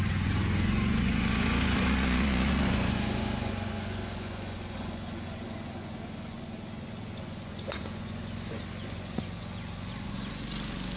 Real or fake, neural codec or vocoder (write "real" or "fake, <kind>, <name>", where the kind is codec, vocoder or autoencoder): fake, vocoder, Vocos